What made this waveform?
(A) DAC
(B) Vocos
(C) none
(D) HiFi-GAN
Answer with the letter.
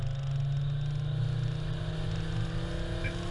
C